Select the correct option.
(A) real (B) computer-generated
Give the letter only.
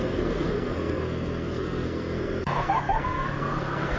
B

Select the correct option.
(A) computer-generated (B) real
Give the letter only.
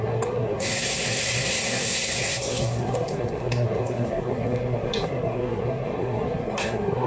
A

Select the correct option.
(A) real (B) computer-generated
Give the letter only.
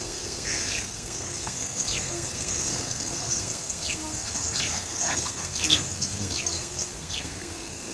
B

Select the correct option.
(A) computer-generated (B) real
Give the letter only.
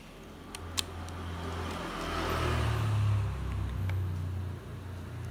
B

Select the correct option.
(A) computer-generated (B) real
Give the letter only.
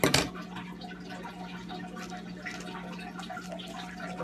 B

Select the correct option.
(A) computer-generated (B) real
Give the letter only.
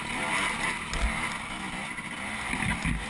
B